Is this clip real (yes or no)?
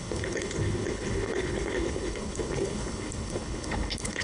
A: no